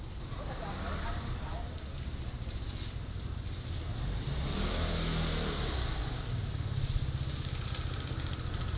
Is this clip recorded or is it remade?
recorded